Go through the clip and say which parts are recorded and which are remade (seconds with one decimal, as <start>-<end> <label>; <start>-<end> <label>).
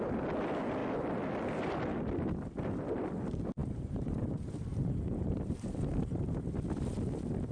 0.0-7.5 recorded